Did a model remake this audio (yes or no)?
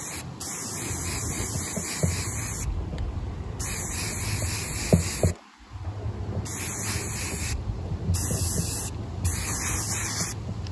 no